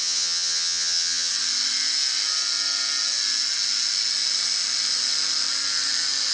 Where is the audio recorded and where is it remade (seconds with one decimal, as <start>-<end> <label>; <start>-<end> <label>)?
0.0-1.3 remade; 1.3-6.3 recorded